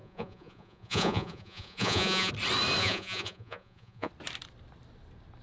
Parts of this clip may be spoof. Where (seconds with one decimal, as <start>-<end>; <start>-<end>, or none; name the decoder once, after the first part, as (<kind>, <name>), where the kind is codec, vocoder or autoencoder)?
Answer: 0.0-2.3 (vocoder, Vocos); 2.8-4.1